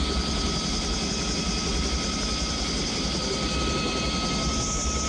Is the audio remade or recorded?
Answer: recorded